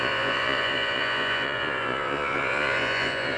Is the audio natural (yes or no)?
no